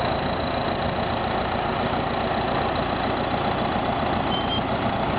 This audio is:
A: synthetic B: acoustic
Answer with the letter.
B